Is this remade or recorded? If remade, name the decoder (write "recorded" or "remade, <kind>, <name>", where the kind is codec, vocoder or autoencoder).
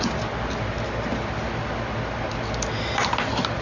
recorded